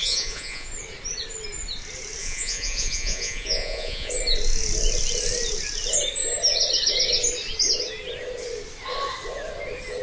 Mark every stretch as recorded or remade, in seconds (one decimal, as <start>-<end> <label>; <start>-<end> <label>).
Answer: 0.0-0.7 remade; 0.7-2.2 recorded; 2.2-4.1 remade; 4.1-10.0 recorded